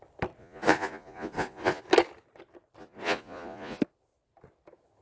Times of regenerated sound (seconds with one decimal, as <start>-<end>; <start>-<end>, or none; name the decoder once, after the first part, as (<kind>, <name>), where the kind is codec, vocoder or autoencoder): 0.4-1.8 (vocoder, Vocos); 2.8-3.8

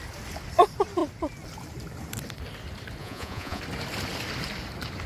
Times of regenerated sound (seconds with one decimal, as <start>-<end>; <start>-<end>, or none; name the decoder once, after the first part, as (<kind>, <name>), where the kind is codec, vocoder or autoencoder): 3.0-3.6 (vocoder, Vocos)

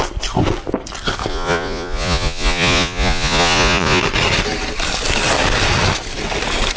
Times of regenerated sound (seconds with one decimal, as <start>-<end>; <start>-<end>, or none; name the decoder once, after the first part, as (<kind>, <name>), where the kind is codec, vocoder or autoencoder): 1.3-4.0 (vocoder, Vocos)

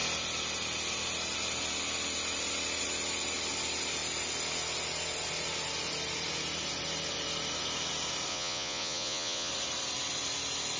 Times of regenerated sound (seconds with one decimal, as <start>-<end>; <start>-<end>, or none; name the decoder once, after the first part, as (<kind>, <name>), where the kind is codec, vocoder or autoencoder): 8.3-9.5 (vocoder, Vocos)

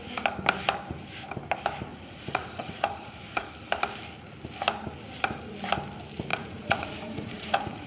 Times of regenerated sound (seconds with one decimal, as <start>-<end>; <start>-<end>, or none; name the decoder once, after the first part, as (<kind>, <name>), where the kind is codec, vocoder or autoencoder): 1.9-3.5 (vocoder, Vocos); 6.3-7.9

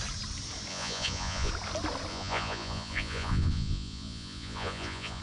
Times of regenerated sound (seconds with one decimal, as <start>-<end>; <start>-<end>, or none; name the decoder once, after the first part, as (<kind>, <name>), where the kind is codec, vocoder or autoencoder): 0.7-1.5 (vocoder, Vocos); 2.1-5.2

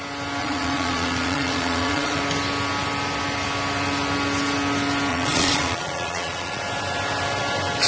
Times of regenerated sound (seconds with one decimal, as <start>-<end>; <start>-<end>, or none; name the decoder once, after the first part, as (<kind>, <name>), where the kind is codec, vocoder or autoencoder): 0.4-2.2 (vocoder, Vocos); 5.1-6.6